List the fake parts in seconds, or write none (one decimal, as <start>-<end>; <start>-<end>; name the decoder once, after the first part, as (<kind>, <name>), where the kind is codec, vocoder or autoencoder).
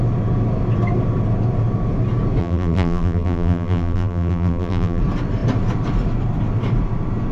2.4-5.0 (vocoder, BigVGAN v2)